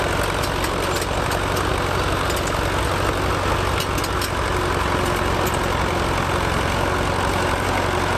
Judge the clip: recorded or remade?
recorded